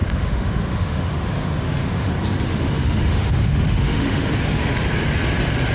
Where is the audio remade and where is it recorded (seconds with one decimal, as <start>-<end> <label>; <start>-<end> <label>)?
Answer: 0.0-2.1 remade; 2.1-2.5 recorded; 2.5-4.3 remade; 4.3-5.7 recorded